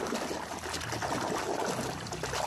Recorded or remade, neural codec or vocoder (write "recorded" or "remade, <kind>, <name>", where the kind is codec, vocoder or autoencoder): recorded